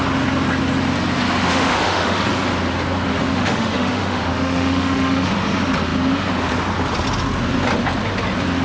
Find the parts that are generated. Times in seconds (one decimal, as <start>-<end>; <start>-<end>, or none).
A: 1.4-2.2; 3.3-5.3